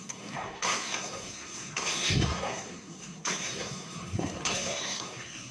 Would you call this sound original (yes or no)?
no